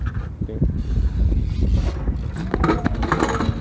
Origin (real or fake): real